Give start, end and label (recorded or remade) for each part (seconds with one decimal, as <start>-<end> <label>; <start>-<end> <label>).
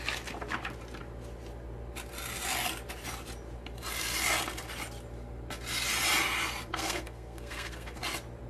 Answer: 0.0-6.7 recorded; 6.7-8.0 remade; 8.0-8.5 recorded